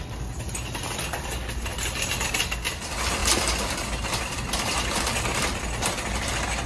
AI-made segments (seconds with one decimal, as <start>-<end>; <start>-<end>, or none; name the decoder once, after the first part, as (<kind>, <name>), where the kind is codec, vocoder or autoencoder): 1.7-2.4 (vocoder, BigVGAN v2)